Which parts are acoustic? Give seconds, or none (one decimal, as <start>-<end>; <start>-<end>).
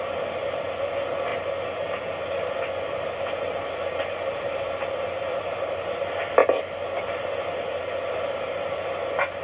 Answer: 0.0-9.4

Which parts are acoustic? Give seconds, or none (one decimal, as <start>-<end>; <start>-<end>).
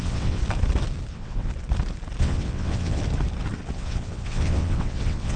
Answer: 0.4-1.1; 1.5-2.2; 3.0-3.7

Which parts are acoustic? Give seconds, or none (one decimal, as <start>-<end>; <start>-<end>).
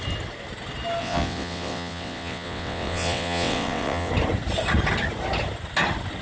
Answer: 0.0-1.0; 4.1-6.2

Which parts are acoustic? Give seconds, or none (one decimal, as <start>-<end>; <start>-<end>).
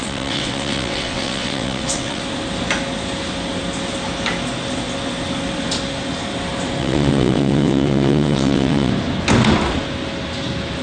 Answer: 2.2-6.8; 8.9-10.8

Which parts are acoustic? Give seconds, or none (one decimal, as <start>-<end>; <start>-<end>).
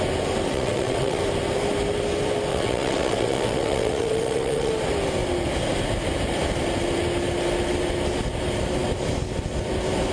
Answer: 0.0-0.5; 1.2-2.5; 4.7-10.1